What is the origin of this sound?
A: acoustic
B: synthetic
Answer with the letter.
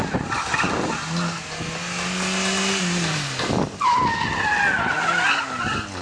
A